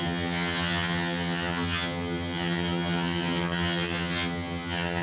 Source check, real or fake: fake